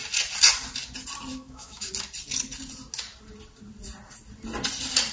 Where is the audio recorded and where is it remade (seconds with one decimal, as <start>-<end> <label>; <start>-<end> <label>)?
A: 0.0-1.3 recorded; 1.3-1.9 remade; 1.9-5.1 recorded